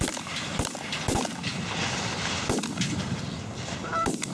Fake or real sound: real